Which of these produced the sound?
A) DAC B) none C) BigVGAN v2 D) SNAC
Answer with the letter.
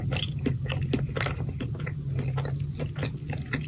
B